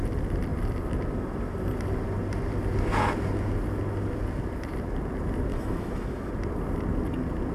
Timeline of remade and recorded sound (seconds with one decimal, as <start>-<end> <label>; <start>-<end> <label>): 0.0-5.5 recorded; 5.5-6.3 remade; 6.3-7.5 recorded